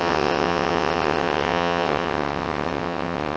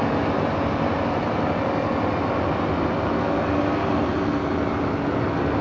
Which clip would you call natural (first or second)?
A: second